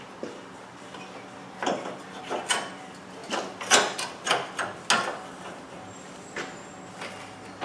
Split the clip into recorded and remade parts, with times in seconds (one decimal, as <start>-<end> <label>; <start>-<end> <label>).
0.0-7.6 recorded